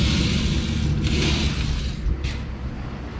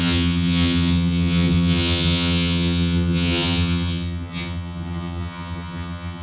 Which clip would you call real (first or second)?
first